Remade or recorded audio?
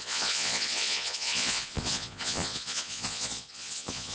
remade